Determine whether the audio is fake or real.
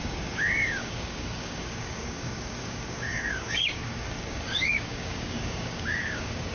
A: fake